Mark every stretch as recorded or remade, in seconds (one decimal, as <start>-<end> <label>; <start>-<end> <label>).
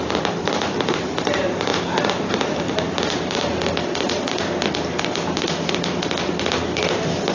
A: 0.0-1.7 remade; 1.7-2.3 recorded; 2.3-3.5 remade; 3.5-7.3 recorded